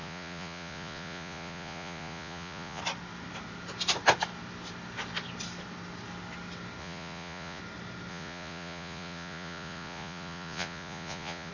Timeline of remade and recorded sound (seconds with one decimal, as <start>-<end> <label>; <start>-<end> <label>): 0.0-2.8 remade; 2.8-6.8 recorded; 6.8-7.6 remade; 7.6-8.1 recorded; 8.1-11.5 remade